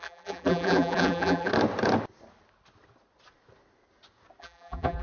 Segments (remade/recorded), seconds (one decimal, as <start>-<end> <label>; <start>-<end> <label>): 0.0-1.5 remade; 1.5-4.4 recorded; 4.4-5.0 remade